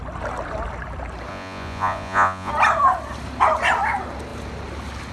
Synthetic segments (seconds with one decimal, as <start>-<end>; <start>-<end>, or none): 1.3-2.5